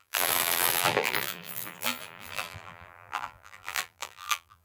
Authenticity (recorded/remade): remade